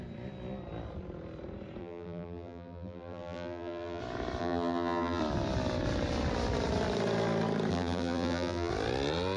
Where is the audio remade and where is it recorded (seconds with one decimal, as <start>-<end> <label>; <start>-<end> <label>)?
0.0-1.8 recorded; 1.8-4.0 remade; 4.0-4.4 recorded; 4.4-5.2 remade; 5.2-7.7 recorded; 7.7-8.7 remade; 8.7-9.4 recorded

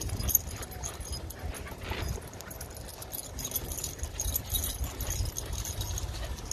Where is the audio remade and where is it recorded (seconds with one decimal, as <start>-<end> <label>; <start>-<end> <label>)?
0.0-6.5 recorded

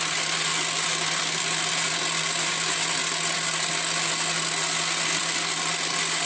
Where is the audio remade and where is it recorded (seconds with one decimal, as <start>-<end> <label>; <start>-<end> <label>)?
0.0-6.3 recorded

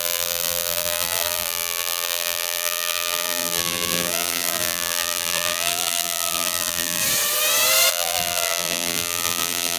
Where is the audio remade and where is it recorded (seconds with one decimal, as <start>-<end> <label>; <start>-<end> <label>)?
0.0-7.0 remade; 7.0-7.9 recorded; 7.9-9.8 remade

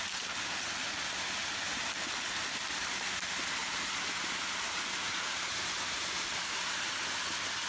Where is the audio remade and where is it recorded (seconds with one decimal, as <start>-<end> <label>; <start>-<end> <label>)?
0.0-3.6 recorded; 3.6-7.2 remade; 7.2-7.7 recorded

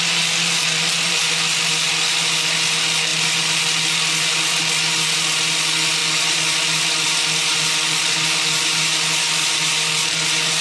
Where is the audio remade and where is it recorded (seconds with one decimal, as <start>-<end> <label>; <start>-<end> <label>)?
0.0-0.6 recorded; 0.6-1.9 remade; 1.9-3.1 recorded; 3.1-4.6 remade; 4.6-6.0 recorded; 6.0-10.1 remade; 10.1-10.6 recorded

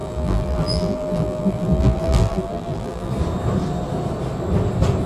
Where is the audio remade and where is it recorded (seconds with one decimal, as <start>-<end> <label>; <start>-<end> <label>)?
0.0-3.1 remade; 3.1-5.1 recorded

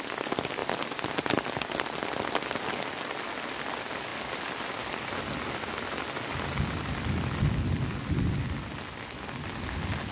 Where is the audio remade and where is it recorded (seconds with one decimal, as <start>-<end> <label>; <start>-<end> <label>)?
0.0-10.1 recorded